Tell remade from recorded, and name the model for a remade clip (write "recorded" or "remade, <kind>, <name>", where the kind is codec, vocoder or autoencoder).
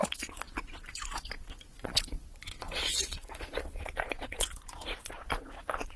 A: remade, vocoder, Vocos